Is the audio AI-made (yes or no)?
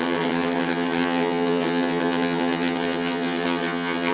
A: yes